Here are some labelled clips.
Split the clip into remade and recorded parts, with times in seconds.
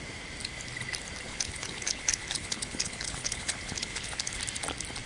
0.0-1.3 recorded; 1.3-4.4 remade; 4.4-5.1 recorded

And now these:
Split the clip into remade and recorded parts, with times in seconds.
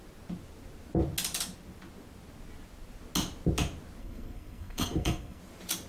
0.0-4.0 recorded; 4.0-5.4 remade; 5.4-5.9 recorded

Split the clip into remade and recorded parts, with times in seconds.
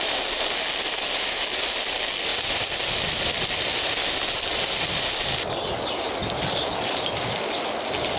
0.0-8.2 recorded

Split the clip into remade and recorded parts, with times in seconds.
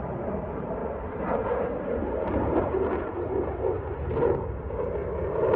0.0-5.6 recorded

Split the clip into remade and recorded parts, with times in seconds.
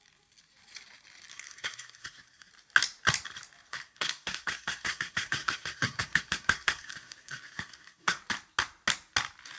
0.0-1.3 recorded; 1.3-2.5 remade; 2.5-3.7 recorded; 3.7-8.2 remade; 8.2-9.6 recorded